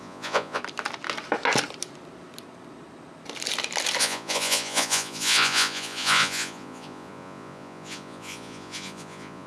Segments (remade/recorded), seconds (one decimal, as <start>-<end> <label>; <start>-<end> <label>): 0.0-0.6 remade; 0.6-4.0 recorded; 4.0-9.5 remade